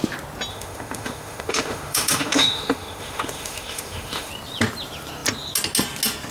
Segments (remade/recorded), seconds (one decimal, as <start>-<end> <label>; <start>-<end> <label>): 0.0-0.5 recorded; 0.5-4.3 remade; 4.3-6.3 recorded